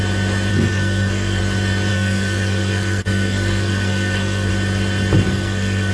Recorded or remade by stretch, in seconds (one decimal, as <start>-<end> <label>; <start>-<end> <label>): 0.0-0.5 recorded; 0.5-1.4 remade; 1.4-1.9 recorded; 1.9-4.5 remade; 4.5-5.2 recorded; 5.2-5.9 remade